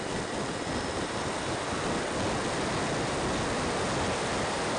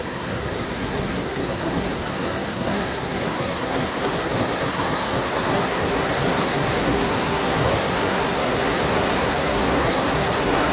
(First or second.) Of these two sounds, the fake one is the second